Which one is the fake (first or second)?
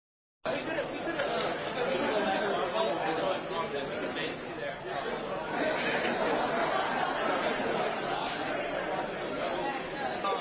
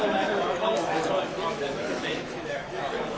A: second